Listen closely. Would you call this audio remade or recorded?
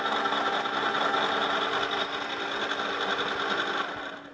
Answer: recorded